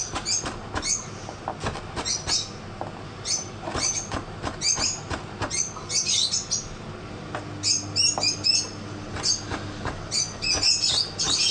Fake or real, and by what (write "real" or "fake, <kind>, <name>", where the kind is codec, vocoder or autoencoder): real